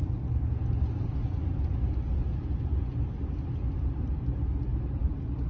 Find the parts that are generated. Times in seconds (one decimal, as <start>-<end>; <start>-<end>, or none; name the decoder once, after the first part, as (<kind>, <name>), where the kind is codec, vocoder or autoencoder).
4.7-5.5 (vocoder, BigVGAN v2)